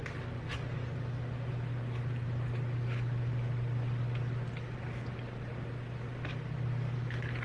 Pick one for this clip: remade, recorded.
recorded